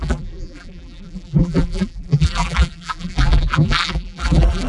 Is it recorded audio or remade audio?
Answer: remade